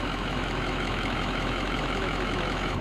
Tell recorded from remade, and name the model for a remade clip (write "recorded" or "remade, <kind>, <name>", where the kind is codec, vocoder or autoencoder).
remade, autoencoder, DAC-VAE